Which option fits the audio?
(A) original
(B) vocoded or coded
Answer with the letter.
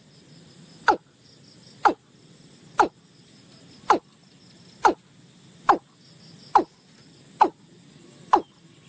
A